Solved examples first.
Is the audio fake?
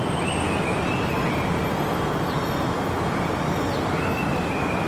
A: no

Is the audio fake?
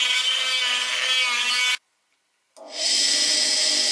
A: no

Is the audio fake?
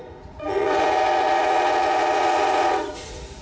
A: yes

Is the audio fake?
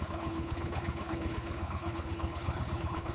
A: yes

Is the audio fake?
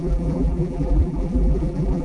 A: yes